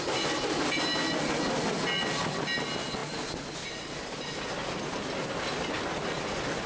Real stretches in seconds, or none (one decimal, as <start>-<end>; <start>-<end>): 0.0-6.7